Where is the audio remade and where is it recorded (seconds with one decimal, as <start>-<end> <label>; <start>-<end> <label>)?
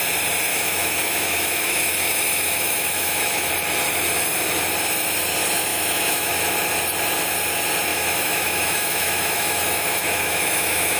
0.0-0.5 recorded; 0.5-3.5 remade; 3.5-5.7 recorded; 5.7-6.3 remade; 6.3-7.9 recorded; 7.9-11.0 remade